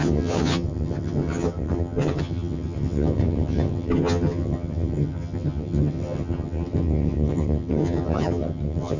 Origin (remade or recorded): remade